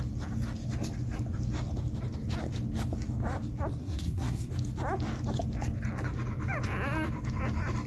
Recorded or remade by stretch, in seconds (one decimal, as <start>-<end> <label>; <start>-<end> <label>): 0.0-3.8 recorded; 3.8-4.5 remade; 4.5-7.9 recorded